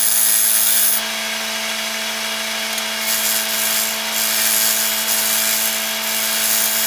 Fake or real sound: real